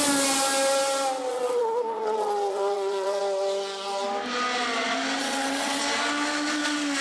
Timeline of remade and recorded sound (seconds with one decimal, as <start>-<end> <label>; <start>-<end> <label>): 0.0-1.3 recorded; 1.3-3.2 remade; 3.2-5.2 recorded; 5.2-5.8 remade; 5.8-7.0 recorded